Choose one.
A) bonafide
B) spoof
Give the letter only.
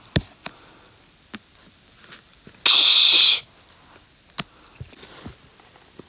A